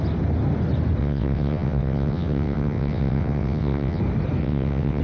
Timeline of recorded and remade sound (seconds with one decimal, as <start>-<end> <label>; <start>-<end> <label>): 0.0-1.0 recorded; 1.0-4.0 remade; 4.0-4.4 recorded; 4.4-5.0 remade